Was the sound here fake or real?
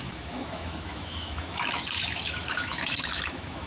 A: fake